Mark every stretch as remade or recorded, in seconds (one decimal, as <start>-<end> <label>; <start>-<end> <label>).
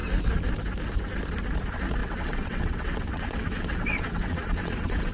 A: 0.0-2.0 recorded; 2.0-5.1 remade